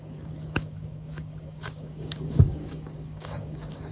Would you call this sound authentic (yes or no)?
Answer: no